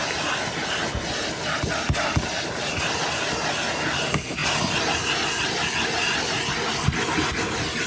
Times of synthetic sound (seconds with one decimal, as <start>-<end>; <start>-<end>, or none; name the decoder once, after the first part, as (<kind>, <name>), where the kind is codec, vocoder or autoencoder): none